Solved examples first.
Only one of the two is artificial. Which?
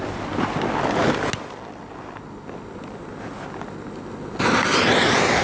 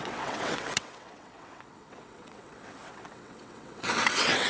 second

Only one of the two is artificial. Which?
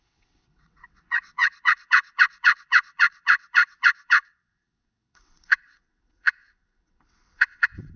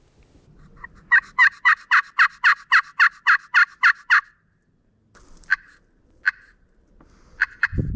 first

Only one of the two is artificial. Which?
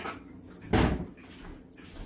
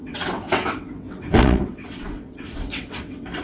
second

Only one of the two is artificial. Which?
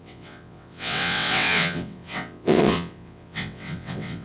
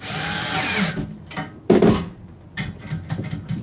first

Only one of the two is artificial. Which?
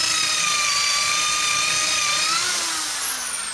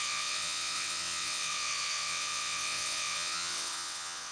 second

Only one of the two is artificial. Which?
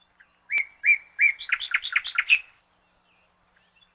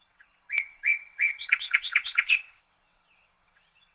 second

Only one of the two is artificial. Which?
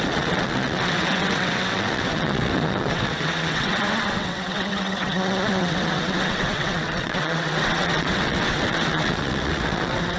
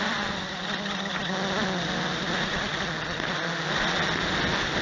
first